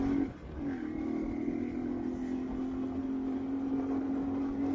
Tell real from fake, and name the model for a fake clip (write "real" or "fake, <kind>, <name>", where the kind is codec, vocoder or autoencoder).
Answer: real